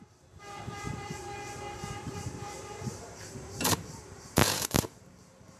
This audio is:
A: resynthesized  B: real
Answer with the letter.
A